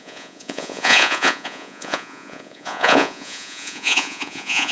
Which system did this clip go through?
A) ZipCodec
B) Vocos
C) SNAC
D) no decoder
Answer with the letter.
B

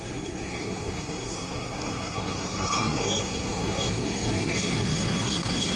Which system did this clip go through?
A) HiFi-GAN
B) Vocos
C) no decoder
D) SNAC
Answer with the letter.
D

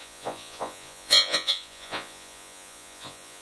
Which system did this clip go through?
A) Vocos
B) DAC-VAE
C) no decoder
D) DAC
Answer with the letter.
A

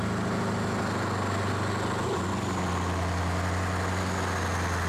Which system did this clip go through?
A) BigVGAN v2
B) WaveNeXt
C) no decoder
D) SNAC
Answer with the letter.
C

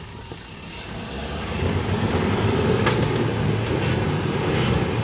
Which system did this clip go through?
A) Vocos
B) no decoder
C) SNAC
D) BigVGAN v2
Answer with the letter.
B